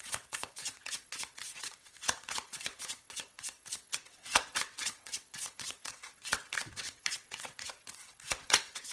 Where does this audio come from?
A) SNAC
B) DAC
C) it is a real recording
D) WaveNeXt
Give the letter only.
D